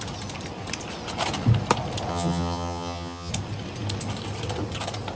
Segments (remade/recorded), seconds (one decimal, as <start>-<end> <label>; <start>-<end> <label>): 0.0-2.1 recorded; 2.1-3.3 remade; 3.3-5.2 recorded